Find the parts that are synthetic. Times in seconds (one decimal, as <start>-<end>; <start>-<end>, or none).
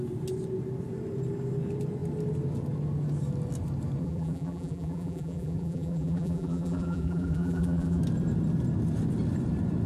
4.0-8.0